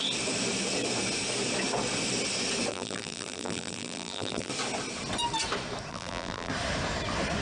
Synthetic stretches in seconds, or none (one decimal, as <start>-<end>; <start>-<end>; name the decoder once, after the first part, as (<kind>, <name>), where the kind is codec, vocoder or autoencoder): 2.7-4.5 (vocoder, BigVGAN v2); 5.9-6.5